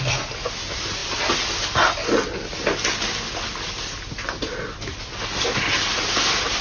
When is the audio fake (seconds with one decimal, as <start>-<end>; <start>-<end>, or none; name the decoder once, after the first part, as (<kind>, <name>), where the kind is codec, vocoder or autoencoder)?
none